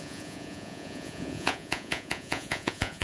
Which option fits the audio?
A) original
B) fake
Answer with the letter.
B